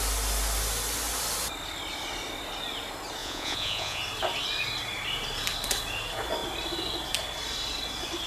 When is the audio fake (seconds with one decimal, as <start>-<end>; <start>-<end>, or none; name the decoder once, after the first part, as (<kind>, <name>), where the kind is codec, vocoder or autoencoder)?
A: 3.2-4.0 (vocoder, Vocos)